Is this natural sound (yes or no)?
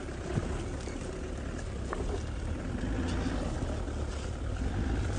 yes